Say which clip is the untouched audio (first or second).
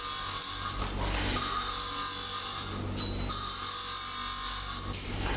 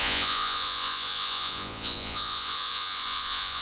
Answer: first